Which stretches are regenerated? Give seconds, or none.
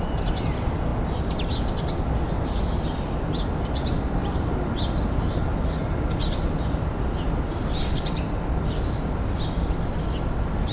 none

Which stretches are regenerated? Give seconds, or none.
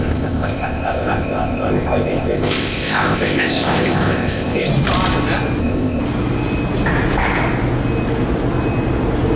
0.0-4.7; 5.6-6.0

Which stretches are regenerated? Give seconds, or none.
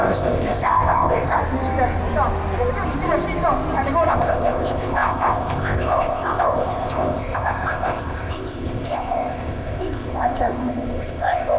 0.0-1.4; 4.1-11.6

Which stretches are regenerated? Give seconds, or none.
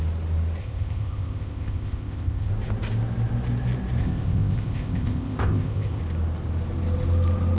0.6-2.5; 4.0-6.0